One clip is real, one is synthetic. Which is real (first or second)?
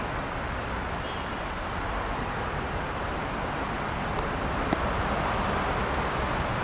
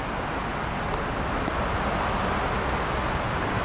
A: second